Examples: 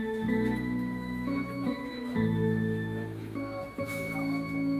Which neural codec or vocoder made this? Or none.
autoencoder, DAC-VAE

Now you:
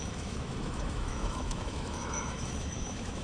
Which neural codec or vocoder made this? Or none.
autoencoder, DAC-VAE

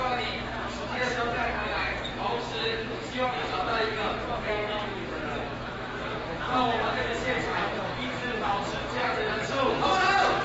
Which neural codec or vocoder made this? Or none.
autoencoder, DAC-VAE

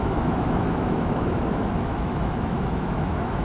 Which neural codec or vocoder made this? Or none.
autoencoder, DAC-VAE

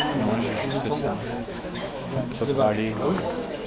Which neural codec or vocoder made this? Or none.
autoencoder, DAC-VAE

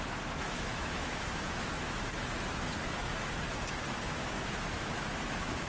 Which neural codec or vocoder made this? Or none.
autoencoder, DAC-VAE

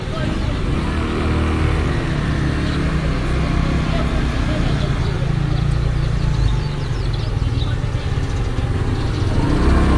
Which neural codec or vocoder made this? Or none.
none